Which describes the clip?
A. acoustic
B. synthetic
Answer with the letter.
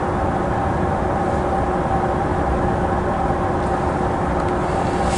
A